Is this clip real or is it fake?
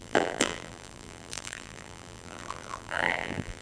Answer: fake